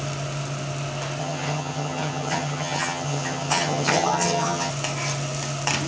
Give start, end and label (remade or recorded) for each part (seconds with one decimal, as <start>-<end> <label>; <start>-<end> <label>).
0.0-1.2 recorded; 1.2-4.7 remade; 4.7-5.9 recorded